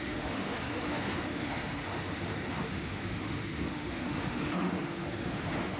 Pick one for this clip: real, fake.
fake